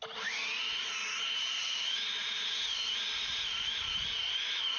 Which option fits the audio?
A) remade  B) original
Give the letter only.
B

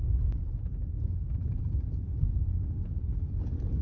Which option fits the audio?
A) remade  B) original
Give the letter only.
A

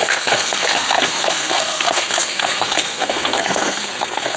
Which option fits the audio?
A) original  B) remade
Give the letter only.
B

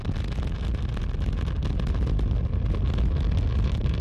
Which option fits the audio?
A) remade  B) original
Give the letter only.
B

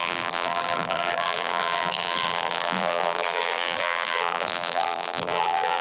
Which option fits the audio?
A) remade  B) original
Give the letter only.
A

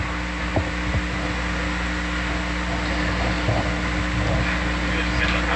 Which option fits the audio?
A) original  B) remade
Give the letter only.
A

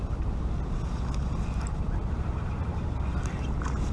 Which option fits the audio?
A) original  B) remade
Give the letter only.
A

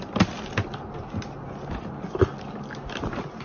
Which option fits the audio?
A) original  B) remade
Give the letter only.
A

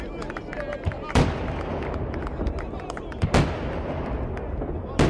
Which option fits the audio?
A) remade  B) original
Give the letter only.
B